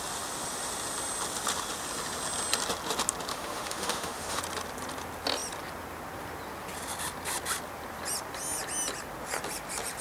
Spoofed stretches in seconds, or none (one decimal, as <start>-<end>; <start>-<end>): 3.3-4.4